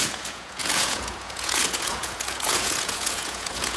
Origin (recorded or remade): remade